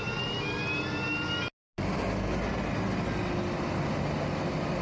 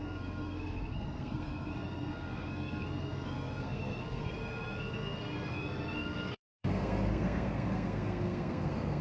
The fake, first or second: second